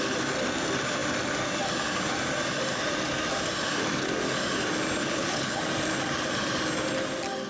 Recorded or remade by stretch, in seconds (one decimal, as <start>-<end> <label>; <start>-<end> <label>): 0.0-5.0 recorded; 5.0-5.6 remade; 5.6-7.5 recorded

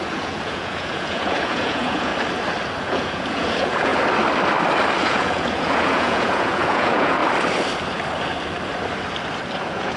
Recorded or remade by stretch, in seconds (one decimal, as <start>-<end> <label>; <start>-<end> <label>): 0.0-2.1 remade; 2.1-2.8 recorded; 2.8-3.9 remade; 3.9-5.0 recorded; 5.0-7.2 remade; 7.2-9.6 recorded; 9.6-10.0 remade

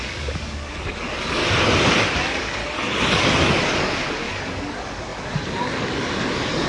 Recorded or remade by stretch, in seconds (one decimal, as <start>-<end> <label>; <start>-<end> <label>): 0.0-1.4 remade; 1.4-2.2 recorded; 2.2-2.6 remade; 2.6-3.2 recorded; 3.2-6.7 remade

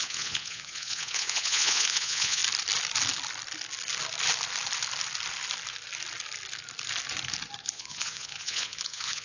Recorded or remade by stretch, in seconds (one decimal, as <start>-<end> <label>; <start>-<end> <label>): 0.0-2.4 remade; 2.4-7.6 recorded; 7.6-9.2 remade

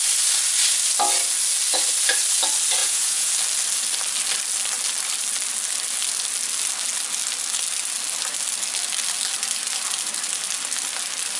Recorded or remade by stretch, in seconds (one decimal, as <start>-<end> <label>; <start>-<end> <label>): 0.0-2.8 recorded; 2.8-3.3 remade; 3.3-11.4 recorded

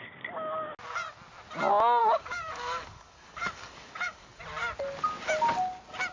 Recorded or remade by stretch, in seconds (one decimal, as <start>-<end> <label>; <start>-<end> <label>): 0.0-2.0 recorded; 2.0-4.4 remade; 4.4-6.1 recorded

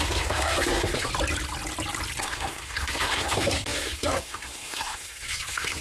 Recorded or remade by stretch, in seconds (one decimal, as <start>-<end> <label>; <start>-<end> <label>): 0.0-1.1 remade; 1.1-2.2 recorded; 2.2-5.8 remade